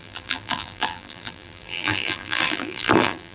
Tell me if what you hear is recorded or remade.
remade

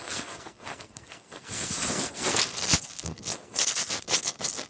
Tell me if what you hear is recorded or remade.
remade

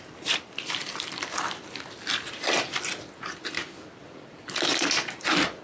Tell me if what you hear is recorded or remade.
remade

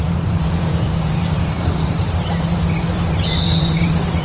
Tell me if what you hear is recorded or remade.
remade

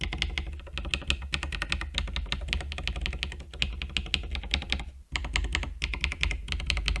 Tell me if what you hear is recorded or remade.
recorded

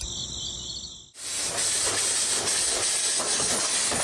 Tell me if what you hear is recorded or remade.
recorded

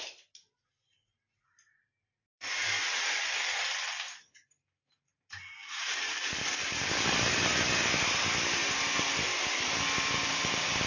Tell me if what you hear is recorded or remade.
remade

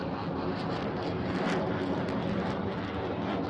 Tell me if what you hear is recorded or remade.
recorded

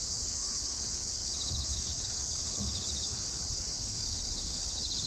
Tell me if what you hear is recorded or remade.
remade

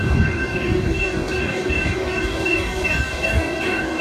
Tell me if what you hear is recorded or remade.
remade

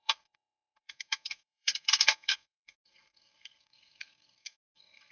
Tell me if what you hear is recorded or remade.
remade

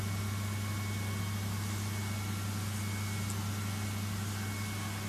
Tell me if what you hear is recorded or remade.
recorded